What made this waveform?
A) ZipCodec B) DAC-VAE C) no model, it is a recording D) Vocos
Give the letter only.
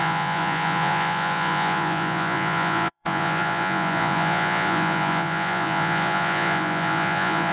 D